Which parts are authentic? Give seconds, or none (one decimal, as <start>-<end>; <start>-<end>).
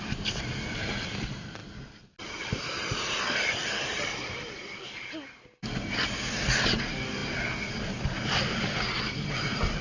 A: 0.0-9.8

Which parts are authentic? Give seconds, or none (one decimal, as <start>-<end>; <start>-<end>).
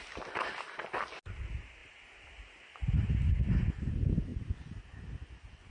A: 0.0-5.7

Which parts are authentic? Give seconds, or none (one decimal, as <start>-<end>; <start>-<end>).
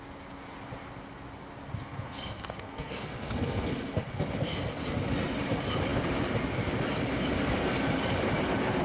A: 0.0-1.8; 4.2-8.8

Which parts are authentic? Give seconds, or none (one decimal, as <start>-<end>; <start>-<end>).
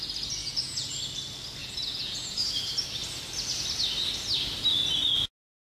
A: 0.0-0.4; 1.0-1.6; 2.5-5.7